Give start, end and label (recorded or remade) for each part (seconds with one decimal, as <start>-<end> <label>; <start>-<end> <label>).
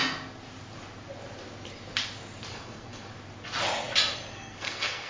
0.0-2.5 recorded; 2.5-3.1 remade; 3.1-4.3 recorded; 4.3-5.1 remade